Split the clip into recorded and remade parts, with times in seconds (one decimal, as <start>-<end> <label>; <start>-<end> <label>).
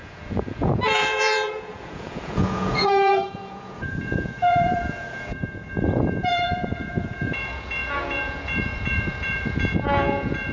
0.0-10.5 remade